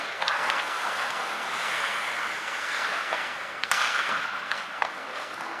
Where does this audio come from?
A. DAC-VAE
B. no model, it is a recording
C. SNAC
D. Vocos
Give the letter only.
C